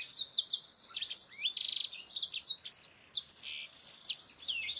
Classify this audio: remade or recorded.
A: recorded